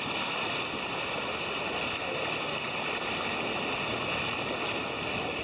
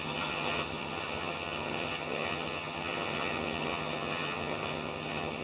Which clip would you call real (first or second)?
first